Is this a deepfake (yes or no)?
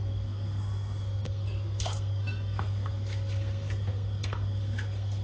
yes